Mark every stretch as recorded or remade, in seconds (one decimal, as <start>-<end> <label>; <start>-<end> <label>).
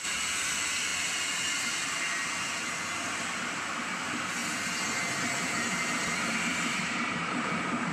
0.0-4.4 remade; 4.4-5.4 recorded; 5.4-7.9 remade